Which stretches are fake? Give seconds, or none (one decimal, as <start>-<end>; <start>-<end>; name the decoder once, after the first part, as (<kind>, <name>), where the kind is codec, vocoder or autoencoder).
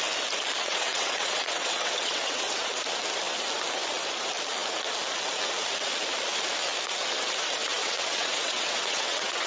0.6-2.8 (vocoder, WaveNeXt); 7.8-9.5